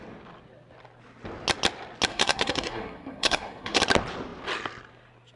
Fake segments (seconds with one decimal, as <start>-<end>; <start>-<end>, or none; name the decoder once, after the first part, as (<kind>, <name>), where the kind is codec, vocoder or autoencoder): 2.1-3.8 (codec, SNAC)